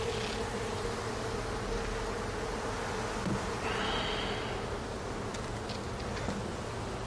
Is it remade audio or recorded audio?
recorded